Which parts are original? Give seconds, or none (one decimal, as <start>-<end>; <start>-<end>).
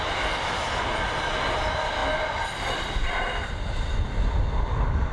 0.0-5.1